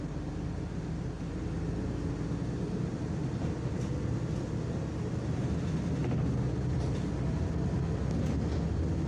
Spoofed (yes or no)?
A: no